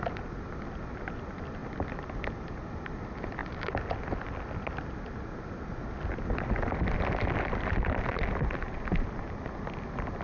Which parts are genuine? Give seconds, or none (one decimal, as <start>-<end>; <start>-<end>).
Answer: 0.0-10.2